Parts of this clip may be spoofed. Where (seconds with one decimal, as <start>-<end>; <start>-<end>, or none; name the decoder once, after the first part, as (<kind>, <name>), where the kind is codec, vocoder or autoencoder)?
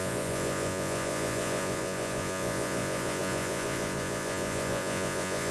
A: 0.0-5.5 (vocoder, Vocos)